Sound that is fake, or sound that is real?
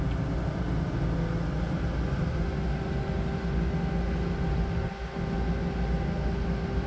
real